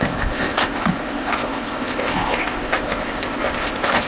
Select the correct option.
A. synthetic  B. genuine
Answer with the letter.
A